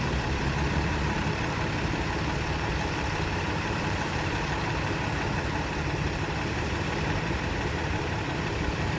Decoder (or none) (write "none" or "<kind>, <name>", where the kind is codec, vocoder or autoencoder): vocoder, BigVGAN v2